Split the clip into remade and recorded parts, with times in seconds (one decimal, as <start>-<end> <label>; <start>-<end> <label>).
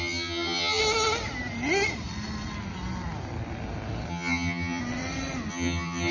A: 0.0-0.8 remade; 0.8-4.1 recorded; 4.1-4.8 remade; 4.8-5.5 recorded; 5.5-6.1 remade